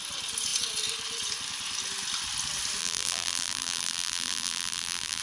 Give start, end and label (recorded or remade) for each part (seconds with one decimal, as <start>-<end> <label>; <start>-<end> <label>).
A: 0.0-2.8 recorded; 2.8-5.2 remade